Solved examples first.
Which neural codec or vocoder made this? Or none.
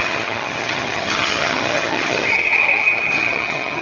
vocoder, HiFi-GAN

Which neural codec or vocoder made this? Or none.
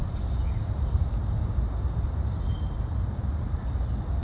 none